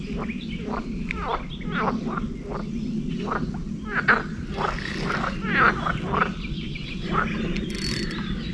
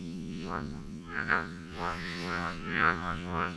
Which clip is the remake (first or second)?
second